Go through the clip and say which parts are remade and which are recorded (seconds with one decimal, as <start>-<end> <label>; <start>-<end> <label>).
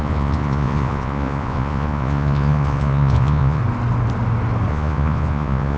0.0-3.6 remade; 3.6-4.7 recorded; 4.7-5.8 remade